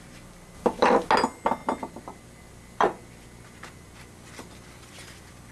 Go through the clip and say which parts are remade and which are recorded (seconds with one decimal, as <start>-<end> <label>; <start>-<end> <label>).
0.0-5.5 recorded